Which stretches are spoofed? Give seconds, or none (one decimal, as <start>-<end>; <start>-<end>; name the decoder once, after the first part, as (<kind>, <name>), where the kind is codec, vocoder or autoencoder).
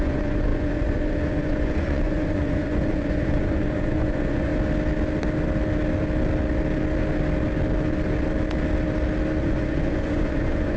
0.0-4.5 (vocoder, Vocos); 9.4-10.8